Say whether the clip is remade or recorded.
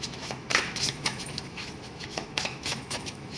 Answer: remade